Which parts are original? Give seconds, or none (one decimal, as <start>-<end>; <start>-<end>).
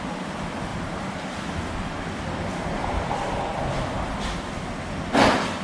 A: 0.0-5.6